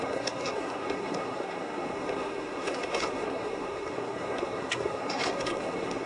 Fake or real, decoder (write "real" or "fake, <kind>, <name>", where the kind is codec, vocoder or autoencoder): fake, codec, SNAC